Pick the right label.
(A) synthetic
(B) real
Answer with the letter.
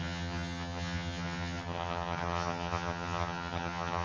A